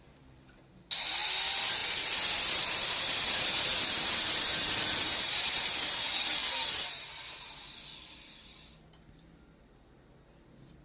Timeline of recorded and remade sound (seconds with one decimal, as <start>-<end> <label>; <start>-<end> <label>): 0.0-1.8 recorded; 1.8-5.7 remade; 5.7-10.8 recorded